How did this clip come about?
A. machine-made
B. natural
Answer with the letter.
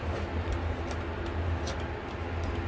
B